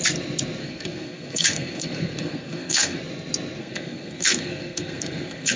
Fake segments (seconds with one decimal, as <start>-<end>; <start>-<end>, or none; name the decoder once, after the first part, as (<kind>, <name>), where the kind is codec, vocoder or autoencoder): 0.6-3.0 (codec, SNAC); 3.6-5.6